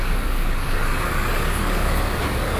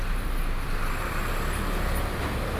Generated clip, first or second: first